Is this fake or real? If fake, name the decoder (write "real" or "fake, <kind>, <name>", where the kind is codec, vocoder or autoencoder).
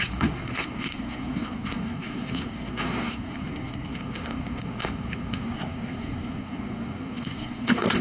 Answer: fake, codec, SNAC